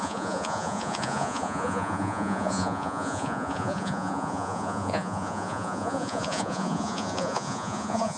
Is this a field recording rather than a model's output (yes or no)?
no